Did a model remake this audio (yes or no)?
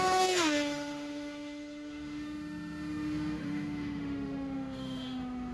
yes